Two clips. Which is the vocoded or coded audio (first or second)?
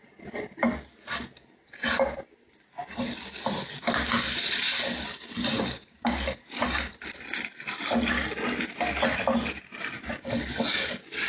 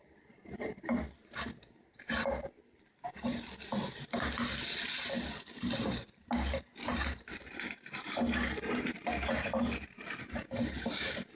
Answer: second